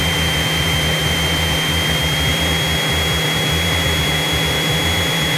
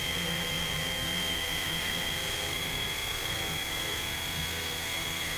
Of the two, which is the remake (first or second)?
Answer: second